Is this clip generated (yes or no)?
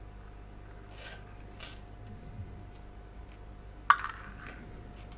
no